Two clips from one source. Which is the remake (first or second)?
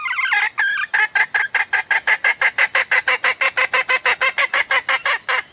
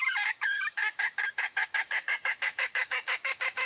second